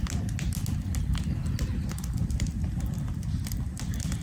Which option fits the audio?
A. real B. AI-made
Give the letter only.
A